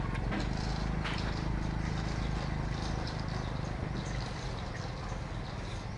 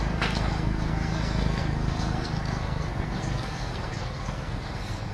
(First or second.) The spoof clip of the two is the second